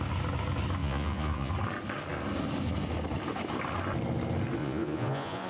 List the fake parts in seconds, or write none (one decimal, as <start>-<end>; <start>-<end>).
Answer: 0.8-1.5; 4.6-5.5